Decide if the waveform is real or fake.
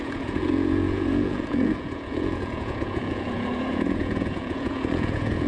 fake